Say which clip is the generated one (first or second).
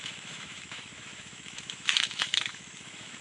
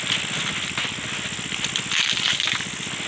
first